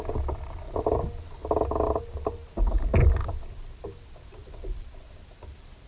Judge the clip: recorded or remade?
recorded